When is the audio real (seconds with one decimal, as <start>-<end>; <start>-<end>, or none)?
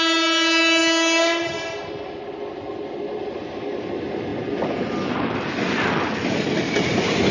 0.0-7.3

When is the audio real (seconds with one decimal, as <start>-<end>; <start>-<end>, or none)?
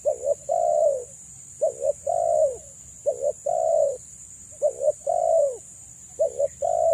0.0-6.9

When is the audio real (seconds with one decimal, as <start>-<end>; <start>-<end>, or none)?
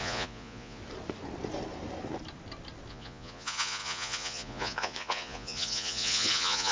0.8-2.9